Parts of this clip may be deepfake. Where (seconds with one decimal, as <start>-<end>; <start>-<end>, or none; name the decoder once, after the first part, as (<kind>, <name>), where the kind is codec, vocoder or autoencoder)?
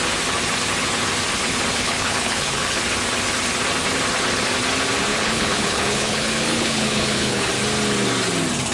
1.7-2.8 (codec, HILCodec); 5.1-7.5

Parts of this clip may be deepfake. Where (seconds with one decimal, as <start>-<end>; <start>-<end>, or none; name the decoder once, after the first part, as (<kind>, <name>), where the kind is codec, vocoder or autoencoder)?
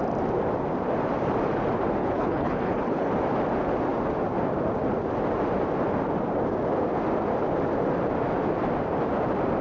2.0-3.1 (codec, HILCodec)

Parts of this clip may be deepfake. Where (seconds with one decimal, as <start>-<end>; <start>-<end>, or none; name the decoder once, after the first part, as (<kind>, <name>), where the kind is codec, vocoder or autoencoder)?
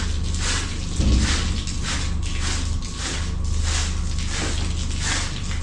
none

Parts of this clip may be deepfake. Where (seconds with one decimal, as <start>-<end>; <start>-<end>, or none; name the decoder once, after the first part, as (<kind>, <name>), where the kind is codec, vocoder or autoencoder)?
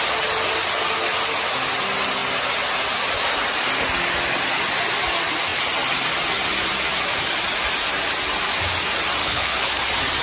9.2-9.7 (codec, HILCodec)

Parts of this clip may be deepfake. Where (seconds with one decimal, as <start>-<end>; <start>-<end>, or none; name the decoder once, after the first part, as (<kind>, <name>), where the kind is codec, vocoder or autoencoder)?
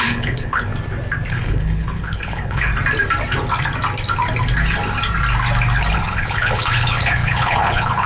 0.0-0.7 (codec, HILCodec); 1.3-2.7; 5.9-8.1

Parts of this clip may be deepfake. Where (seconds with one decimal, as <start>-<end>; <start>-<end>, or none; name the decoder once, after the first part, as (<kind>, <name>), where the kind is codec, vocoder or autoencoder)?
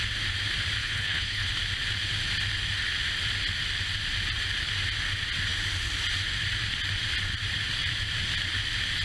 0.8-1.5 (codec, HILCodec)